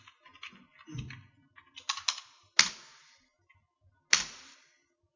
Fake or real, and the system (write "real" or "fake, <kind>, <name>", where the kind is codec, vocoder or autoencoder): real